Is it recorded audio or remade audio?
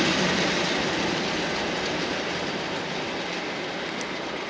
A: recorded